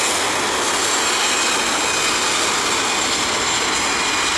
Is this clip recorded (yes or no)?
yes